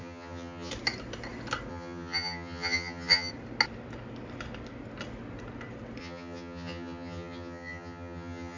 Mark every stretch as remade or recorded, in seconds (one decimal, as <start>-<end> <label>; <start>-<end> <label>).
0.0-0.7 remade; 0.7-1.7 recorded; 1.7-3.3 remade; 3.3-6.0 recorded; 6.0-8.6 remade